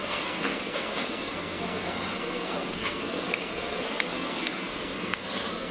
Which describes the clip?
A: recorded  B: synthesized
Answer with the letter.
B